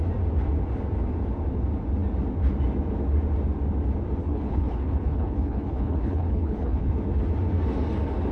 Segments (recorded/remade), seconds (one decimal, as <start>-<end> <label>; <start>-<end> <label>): 0.0-4.2 recorded; 4.2-6.9 remade; 6.9-8.3 recorded